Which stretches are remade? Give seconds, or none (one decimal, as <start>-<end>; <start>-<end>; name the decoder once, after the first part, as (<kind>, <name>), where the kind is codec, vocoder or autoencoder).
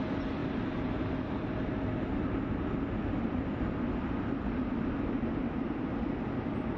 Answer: none